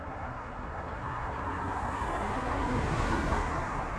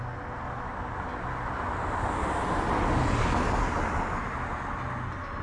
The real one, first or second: second